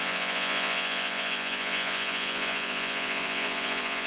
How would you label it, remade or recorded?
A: remade